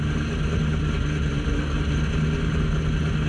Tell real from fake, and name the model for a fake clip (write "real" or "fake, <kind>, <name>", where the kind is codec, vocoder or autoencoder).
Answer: real